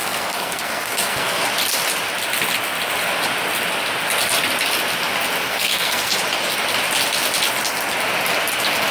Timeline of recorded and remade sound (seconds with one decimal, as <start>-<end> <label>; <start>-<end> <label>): 0.0-1.5 remade; 1.5-5.5 recorded; 5.5-6.1 remade; 6.1-8.9 recorded